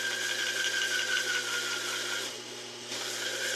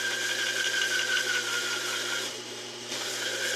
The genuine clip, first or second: first